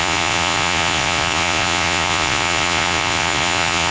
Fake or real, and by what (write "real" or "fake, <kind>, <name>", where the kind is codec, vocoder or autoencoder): fake, vocoder, Vocos